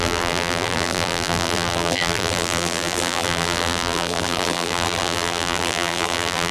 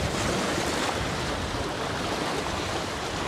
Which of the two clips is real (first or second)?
second